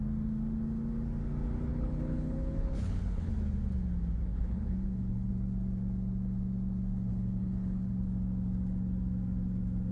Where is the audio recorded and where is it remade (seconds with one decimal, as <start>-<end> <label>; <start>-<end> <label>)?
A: 0.0-1.7 recorded; 1.7-3.3 remade; 3.3-4.3 recorded; 4.3-5.3 remade; 5.3-7.1 recorded; 7.1-7.9 remade; 7.9-9.9 recorded